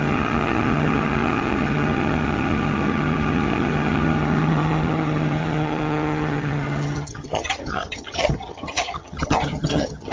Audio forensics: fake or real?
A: fake